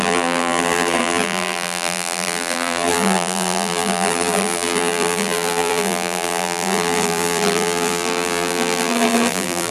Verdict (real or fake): fake